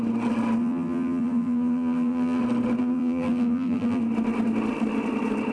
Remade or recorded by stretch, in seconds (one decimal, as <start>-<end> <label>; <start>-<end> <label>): 0.0-0.6 recorded; 0.6-2.4 remade; 2.4-2.8 recorded; 2.8-4.0 remade; 4.0-5.5 recorded